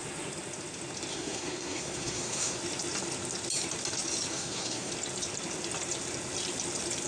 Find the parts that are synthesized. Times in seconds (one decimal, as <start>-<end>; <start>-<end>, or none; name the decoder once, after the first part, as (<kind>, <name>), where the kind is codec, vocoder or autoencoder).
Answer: 1.1-2.6 (codec, SNAC); 4.3-4.9